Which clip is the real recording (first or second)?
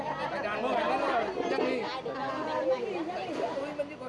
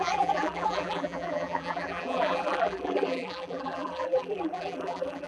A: first